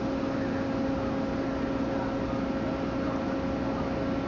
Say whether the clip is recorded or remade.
recorded